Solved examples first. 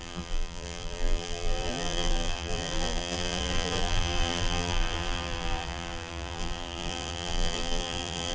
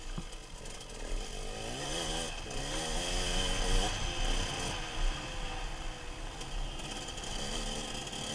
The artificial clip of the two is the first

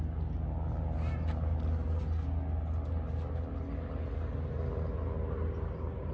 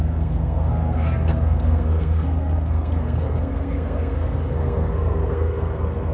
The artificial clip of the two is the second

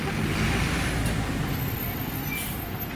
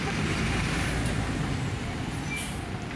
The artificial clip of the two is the second